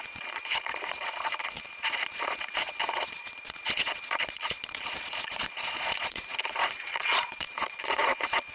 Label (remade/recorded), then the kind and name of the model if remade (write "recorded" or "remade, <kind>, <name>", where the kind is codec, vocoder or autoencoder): remade, vocoder, Vocos